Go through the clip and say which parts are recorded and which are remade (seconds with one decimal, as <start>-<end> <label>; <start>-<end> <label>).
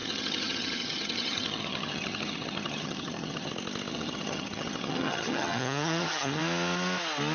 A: 0.0-3.5 remade; 3.5-3.9 recorded; 3.9-6.4 remade; 6.4-7.3 recorded